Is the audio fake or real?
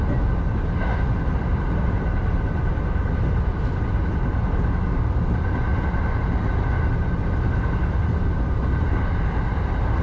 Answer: real